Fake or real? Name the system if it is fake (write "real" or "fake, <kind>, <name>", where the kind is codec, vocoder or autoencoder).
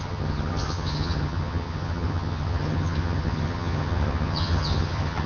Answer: fake, vocoder, HiFi-GAN